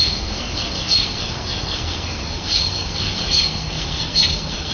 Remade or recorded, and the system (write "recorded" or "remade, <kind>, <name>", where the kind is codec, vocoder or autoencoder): remade, codec, SNAC